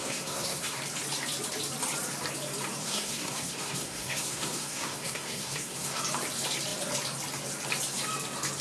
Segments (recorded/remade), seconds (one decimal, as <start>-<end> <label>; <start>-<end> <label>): 0.0-0.8 remade; 0.8-2.8 recorded; 2.8-6.0 remade; 6.0-8.6 recorded